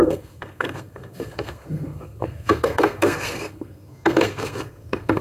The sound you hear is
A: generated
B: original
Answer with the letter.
A